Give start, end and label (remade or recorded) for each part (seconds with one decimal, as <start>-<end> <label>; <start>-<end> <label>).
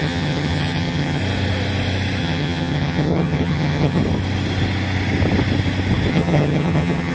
0.0-1.2 remade; 1.2-2.2 recorded; 2.2-4.0 remade; 4.0-6.1 recorded; 6.1-7.1 remade